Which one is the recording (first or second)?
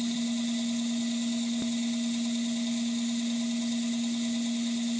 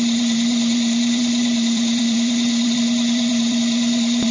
first